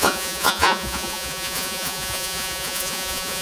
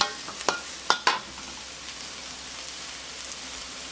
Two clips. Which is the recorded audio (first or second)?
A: second